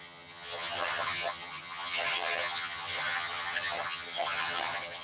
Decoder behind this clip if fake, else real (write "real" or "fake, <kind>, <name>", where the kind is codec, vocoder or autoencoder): fake, vocoder, HiFi-GAN